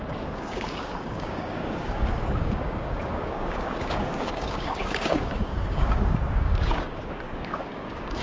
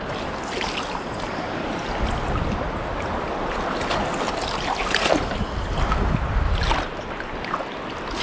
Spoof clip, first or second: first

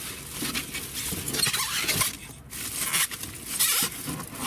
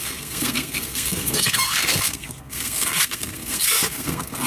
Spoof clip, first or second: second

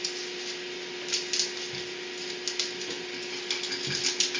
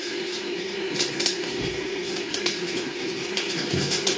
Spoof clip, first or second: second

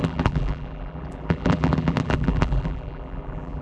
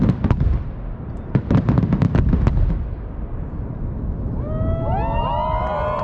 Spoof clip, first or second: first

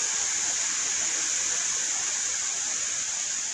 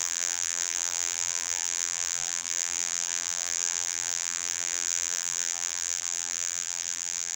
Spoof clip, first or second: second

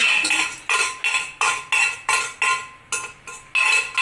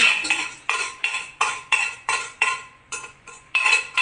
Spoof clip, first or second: second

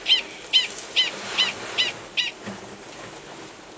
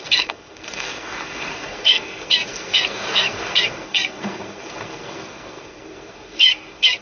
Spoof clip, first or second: second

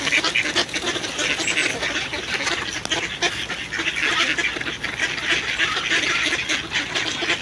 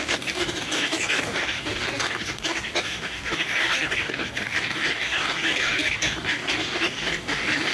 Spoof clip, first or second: second